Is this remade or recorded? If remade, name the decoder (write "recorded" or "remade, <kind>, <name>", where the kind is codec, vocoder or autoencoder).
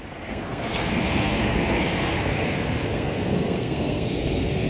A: remade, codec, SNAC